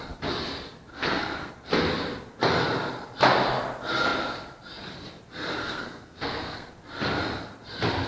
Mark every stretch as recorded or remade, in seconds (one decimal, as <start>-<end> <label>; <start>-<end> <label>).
0.0-0.9 recorded; 0.9-1.5 remade; 1.5-5.6 recorded; 5.6-6.7 remade; 6.7-8.1 recorded